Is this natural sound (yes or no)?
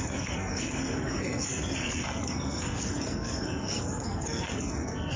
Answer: no